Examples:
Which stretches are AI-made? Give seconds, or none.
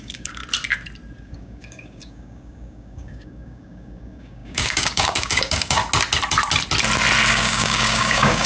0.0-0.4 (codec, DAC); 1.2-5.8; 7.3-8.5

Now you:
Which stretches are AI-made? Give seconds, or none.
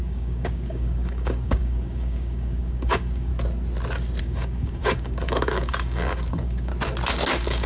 0.0-3.3 (codec, DAC); 4.2-6.7; 7.3-7.7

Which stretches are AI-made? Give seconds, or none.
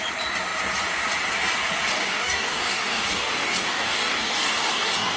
1.9-5.2 (codec, DAC)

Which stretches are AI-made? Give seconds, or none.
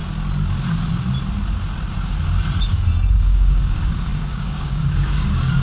2.7-5.6 (codec, DAC)